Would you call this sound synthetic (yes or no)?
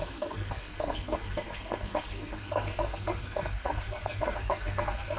yes